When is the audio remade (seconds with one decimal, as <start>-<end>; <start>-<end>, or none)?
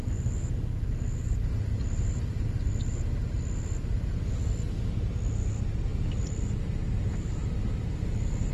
none